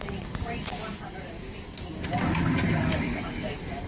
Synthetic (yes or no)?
no